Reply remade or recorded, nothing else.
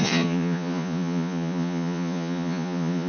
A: remade